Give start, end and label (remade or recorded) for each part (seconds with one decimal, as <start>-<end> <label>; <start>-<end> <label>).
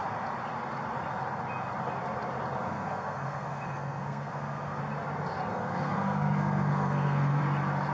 0.0-2.6 recorded; 2.6-4.8 remade; 4.8-5.5 recorded; 5.5-7.4 remade; 7.4-7.9 recorded